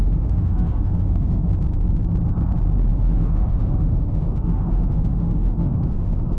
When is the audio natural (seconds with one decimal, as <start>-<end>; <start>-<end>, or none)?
1.5-2.9